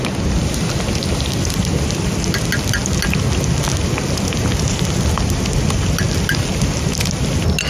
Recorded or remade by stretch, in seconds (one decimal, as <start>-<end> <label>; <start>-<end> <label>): 0.0-7.7 recorded